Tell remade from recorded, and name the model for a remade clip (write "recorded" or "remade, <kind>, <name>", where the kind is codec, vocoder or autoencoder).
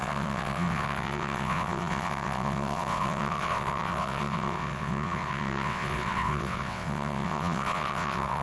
remade, vocoder, WaveNeXt